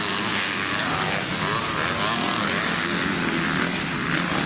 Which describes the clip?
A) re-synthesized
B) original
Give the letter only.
B